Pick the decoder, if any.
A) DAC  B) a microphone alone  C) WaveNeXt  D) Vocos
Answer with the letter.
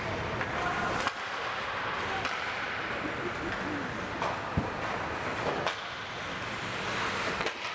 B